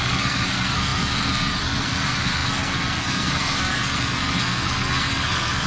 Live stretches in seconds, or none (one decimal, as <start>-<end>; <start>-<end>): none